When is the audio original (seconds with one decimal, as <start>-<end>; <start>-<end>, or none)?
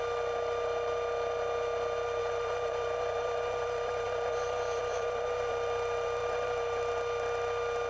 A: 0.0-2.2; 5.5-6.2; 6.9-7.9